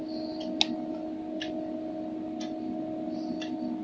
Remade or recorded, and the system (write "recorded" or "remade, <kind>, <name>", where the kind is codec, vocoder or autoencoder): recorded